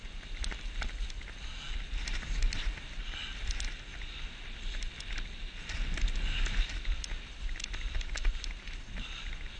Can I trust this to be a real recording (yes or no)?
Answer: yes